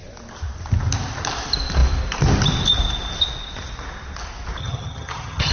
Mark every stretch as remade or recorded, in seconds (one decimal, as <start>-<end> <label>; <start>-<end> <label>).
0.0-4.6 recorded; 4.6-5.5 remade

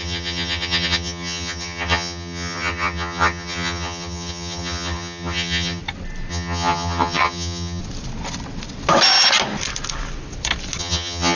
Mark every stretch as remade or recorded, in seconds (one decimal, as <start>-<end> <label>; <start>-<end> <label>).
0.0-5.8 remade; 5.8-6.3 recorded; 6.3-7.8 remade; 7.8-10.8 recorded; 10.8-11.4 remade

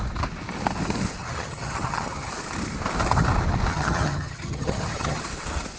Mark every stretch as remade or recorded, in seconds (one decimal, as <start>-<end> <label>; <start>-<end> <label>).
0.0-1.2 recorded; 1.2-2.3 remade; 2.3-3.7 recorded; 3.7-5.2 remade; 5.2-5.8 recorded

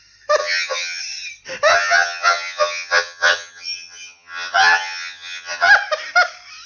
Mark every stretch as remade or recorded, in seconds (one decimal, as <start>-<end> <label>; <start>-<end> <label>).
0.0-0.4 recorded; 0.4-1.0 remade; 1.0-1.7 recorded; 1.7-5.7 remade; 5.7-6.7 recorded

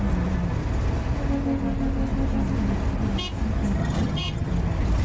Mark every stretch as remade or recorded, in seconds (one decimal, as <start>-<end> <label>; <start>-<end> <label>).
0.0-3.8 recorded; 3.8-4.5 remade; 4.5-5.0 recorded